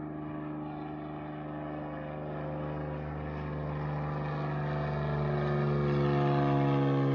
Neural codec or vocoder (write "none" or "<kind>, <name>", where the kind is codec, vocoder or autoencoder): none